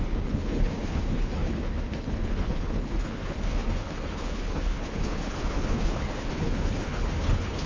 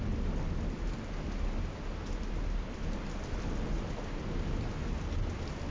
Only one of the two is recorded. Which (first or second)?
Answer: second